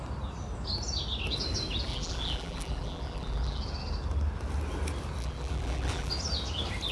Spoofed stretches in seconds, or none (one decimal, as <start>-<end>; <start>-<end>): 1.9-3.6; 5.2-6.1